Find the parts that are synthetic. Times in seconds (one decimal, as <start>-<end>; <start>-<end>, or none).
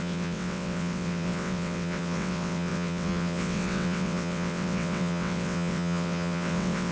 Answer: 0.0-6.9